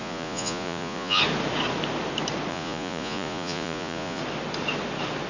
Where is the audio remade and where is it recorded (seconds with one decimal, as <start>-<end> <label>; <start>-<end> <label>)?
0.0-1.2 remade; 1.2-2.5 recorded; 2.5-4.2 remade; 4.2-5.3 recorded